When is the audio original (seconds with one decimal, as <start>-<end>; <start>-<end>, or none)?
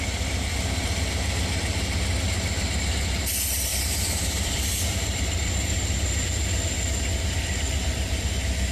0.0-0.5; 1.0-3.7; 7.0-8.7